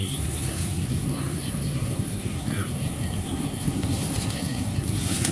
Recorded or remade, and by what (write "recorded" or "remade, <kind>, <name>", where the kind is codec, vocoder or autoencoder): remade, codec, SNAC